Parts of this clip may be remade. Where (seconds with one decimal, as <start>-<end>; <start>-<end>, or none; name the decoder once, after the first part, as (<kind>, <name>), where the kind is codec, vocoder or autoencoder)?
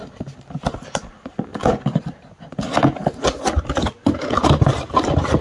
none